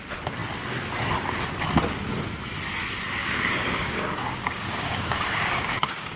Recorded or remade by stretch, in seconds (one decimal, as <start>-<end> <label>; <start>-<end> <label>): 0.0-3.2 recorded; 3.2-6.2 remade